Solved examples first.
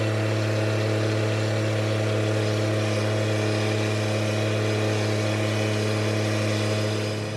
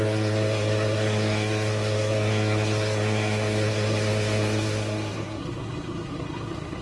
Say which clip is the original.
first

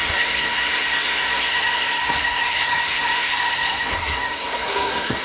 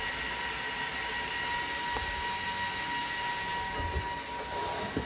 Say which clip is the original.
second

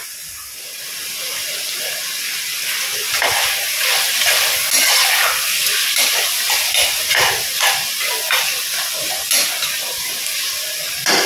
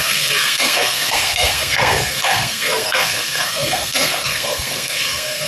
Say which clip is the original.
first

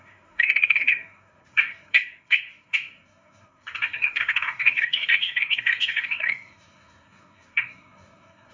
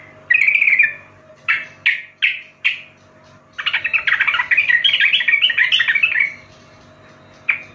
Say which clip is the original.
second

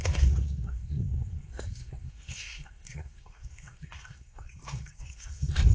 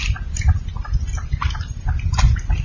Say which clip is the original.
second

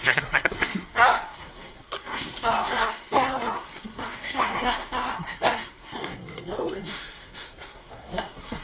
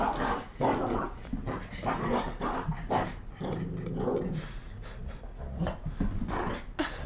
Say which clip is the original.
second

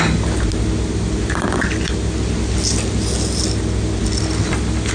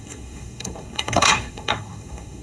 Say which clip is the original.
first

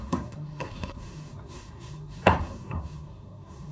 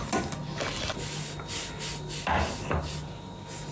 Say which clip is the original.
second